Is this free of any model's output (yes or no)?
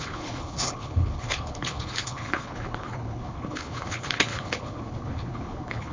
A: no